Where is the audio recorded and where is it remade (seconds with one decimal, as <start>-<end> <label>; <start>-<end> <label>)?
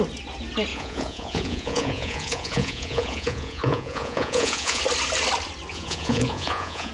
0.0-0.7 recorded; 0.7-4.8 remade; 4.8-5.7 recorded; 5.7-6.9 remade